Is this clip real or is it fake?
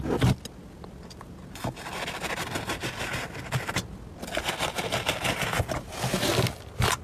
real